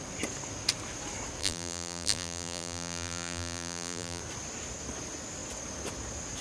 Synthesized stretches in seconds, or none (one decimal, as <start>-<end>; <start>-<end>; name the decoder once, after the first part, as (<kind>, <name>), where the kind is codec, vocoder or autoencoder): 1.4-4.2 (vocoder, BigVGAN v2)